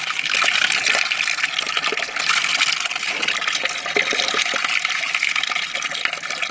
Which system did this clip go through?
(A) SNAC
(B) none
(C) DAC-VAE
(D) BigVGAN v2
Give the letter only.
B